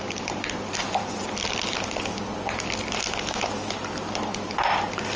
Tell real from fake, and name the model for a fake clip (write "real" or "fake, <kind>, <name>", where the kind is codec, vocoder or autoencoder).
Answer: real